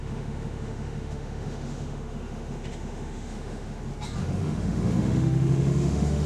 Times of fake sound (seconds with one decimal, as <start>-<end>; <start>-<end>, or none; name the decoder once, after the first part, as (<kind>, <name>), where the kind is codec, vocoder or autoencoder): 0.0-3.8 (autoencoder, DAC-VAE); 4.2-6.3